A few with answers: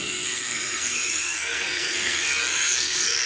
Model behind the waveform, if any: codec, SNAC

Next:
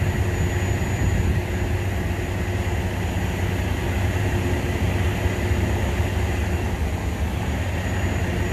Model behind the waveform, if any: none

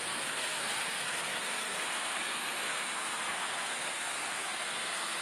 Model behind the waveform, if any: codec, SNAC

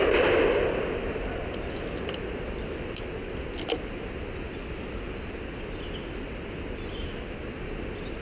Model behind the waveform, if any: none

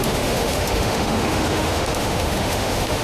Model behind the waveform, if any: autoencoder, DAC-VAE